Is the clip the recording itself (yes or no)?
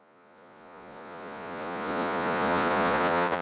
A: no